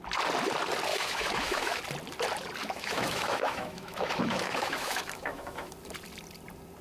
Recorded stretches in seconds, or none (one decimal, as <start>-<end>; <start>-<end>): 0.0-0.9; 1.8-2.6; 5.7-6.8